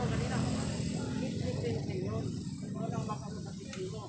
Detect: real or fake real